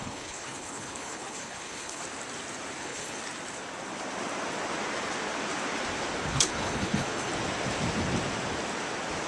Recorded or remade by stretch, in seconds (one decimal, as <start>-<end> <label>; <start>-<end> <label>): 0.0-2.0 remade; 2.0-2.8 recorded; 2.8-3.2 remade; 3.2-6.2 recorded; 6.2-7.3 remade; 7.3-9.3 recorded